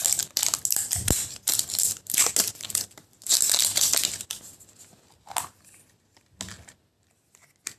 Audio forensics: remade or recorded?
recorded